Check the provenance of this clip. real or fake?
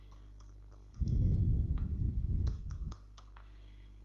fake